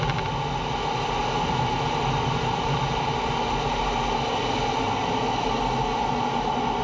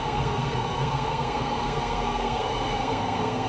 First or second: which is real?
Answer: first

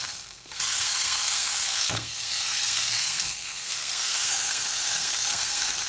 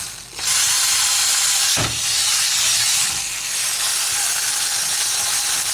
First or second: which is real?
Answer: second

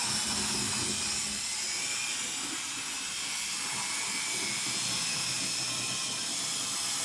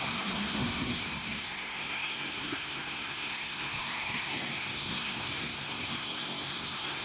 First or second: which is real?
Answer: first